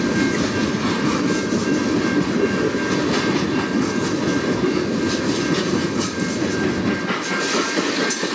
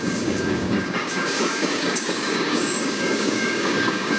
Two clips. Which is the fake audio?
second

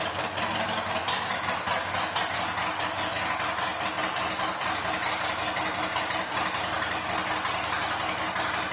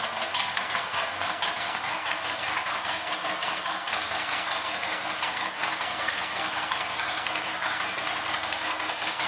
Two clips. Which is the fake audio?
second